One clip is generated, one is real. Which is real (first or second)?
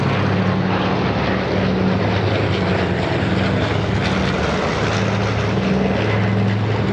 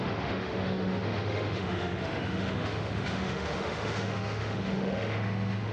first